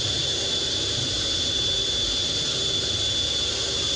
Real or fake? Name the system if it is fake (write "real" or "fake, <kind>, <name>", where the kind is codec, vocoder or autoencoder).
real